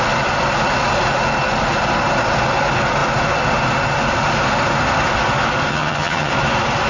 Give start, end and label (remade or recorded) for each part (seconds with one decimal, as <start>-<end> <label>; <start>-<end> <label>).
0.0-5.7 recorded; 5.7-6.3 remade; 6.3-6.9 recorded